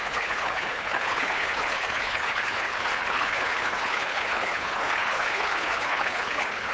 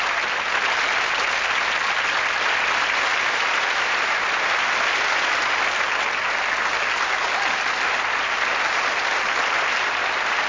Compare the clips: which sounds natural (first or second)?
second